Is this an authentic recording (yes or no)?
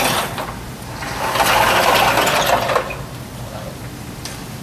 yes